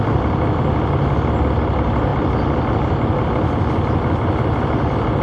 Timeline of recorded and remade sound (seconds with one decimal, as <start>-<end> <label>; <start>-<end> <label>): 0.0-5.2 recorded